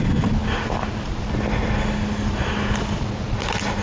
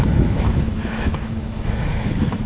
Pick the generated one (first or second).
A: second